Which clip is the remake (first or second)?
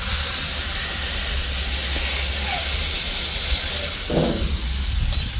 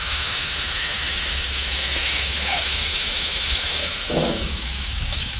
second